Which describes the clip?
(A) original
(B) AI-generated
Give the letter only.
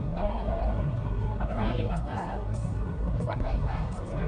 B